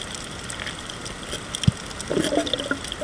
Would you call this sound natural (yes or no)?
yes